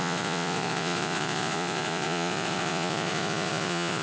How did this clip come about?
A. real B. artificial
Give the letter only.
B